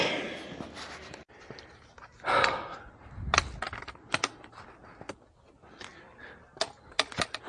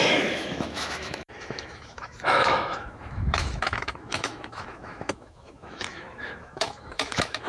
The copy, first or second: second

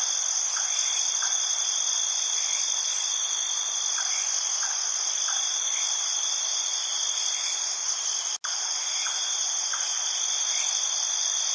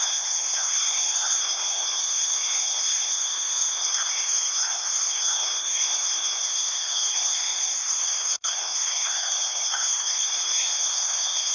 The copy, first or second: second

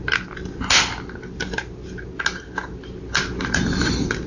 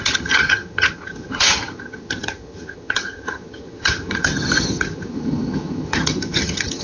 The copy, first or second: second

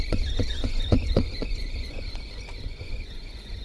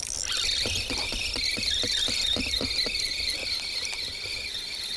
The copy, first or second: first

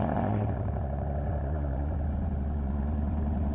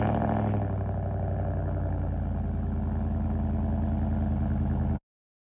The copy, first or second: first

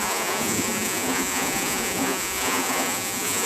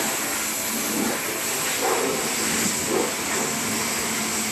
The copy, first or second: first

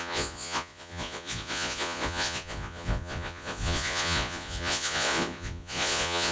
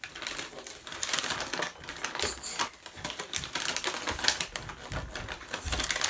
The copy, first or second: first